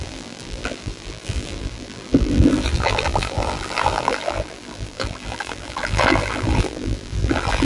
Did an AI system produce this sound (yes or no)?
yes